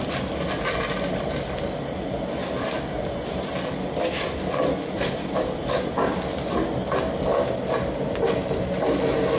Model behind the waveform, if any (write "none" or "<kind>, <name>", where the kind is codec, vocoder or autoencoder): none